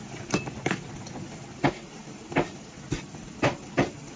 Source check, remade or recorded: remade